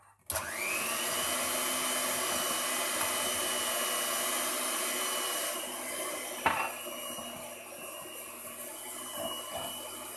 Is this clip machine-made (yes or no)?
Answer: no